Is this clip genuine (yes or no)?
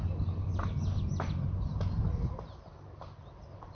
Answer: yes